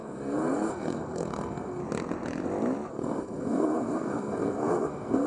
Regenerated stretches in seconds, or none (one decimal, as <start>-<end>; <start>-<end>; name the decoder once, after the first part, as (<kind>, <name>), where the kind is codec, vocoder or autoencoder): 0.0-1.8 (codec, SNAC); 2.9-5.3